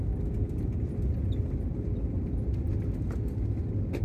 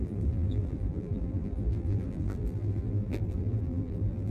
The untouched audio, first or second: first